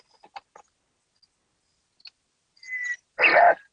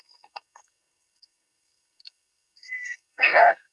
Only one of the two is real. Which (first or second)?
first